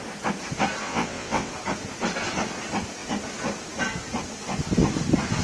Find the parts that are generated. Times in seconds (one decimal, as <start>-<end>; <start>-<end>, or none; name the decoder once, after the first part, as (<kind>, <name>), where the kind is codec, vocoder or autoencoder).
0.8-1.5 (vocoder, WaveNeXt)